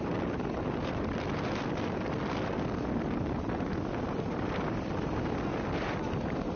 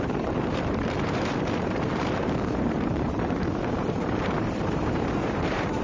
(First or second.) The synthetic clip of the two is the second